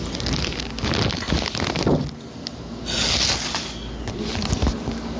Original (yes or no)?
yes